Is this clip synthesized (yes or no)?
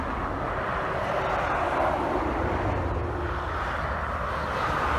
no